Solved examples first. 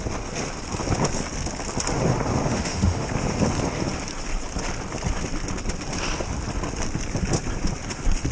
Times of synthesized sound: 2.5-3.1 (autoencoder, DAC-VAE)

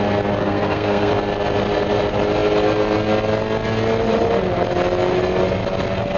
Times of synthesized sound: 0.4-1.1 (codec, SNAC)

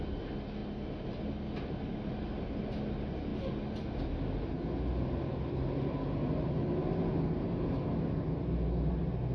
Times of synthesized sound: none

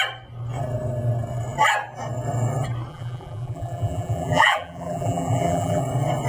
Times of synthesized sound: 2.9-5.8 (vocoder, BigVGAN v2)

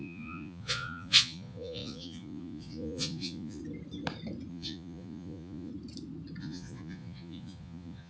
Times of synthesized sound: 0.0-3.6 (vocoder, Vocos); 4.5-5.7; 6.4-8.1